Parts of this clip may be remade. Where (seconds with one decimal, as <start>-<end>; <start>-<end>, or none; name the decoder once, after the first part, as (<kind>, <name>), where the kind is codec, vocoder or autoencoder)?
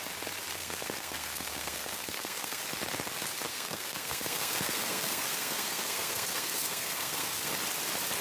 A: 0.5-2.6 (codec, SNAC); 3.5-7.5